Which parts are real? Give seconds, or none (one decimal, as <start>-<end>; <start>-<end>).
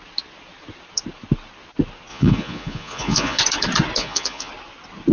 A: 0.0-2.1; 3.4-4.0; 4.5-5.1